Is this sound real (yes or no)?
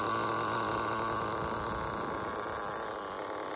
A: yes